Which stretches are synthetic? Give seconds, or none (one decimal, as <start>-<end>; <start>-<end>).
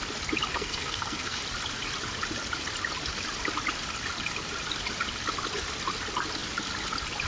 0.5-1.4